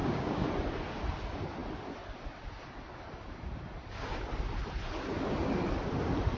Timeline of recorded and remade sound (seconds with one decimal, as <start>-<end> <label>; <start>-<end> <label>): 0.0-0.5 remade; 0.5-6.4 recorded